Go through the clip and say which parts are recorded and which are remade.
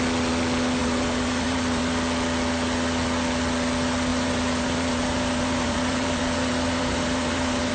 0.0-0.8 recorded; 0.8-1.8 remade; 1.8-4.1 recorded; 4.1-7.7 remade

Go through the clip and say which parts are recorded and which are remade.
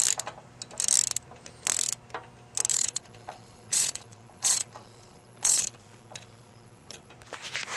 0.0-2.7 recorded; 2.7-7.1 remade; 7.1-7.8 recorded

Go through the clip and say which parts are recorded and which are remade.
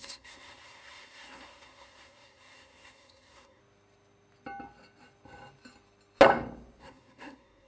0.0-3.6 remade; 3.6-6.8 recorded; 6.8-7.7 remade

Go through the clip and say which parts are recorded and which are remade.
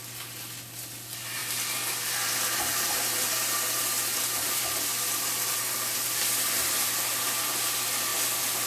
0.0-8.7 recorded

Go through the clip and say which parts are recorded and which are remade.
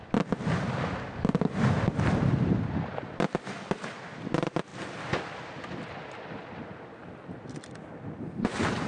0.0-8.9 recorded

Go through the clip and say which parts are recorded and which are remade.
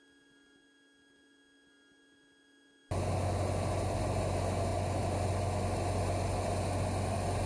0.0-7.5 recorded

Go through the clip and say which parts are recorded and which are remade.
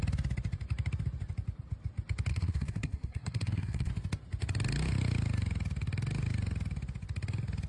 0.0-2.3 recorded; 2.3-3.9 remade; 3.9-7.7 recorded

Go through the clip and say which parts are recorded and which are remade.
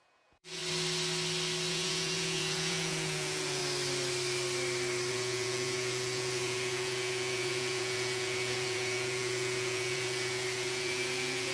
0.0-0.6 remade; 0.6-1.7 recorded; 1.7-3.6 remade; 3.6-5.1 recorded; 5.1-11.5 remade